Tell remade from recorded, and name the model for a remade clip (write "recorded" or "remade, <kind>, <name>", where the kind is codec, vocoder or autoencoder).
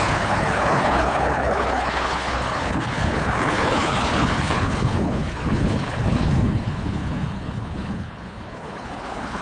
remade, codec, HILCodec